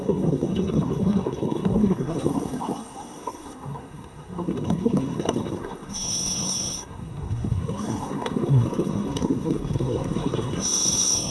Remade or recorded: remade